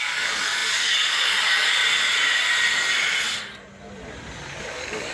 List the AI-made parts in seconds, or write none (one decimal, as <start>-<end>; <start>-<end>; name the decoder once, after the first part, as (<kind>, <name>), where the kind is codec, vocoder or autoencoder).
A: 0.0-1.8 (codec, DAC); 4.6-5.1